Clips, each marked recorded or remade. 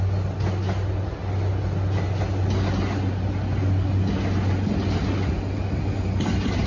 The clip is recorded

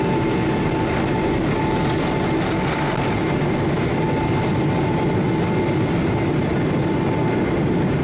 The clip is recorded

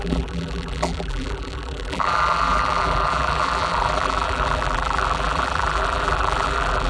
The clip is remade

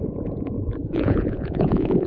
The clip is remade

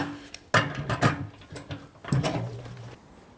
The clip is recorded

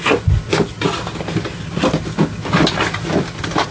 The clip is recorded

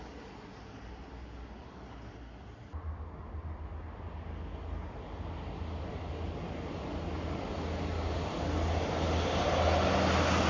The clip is recorded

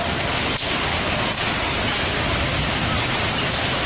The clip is recorded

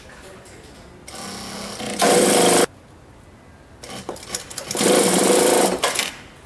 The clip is recorded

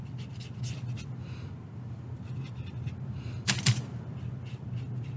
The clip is recorded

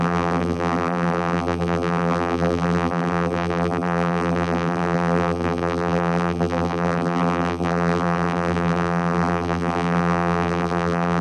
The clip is remade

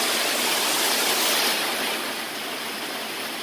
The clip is recorded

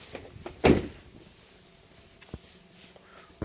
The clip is recorded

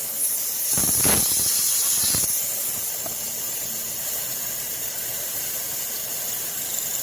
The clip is remade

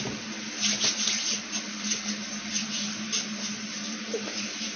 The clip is recorded